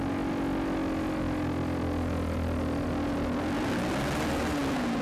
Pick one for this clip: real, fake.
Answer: real